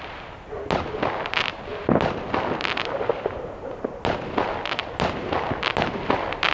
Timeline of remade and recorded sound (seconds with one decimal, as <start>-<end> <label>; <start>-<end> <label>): 0.0-6.5 recorded